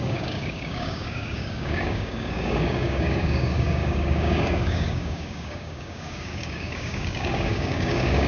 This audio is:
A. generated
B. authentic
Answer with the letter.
A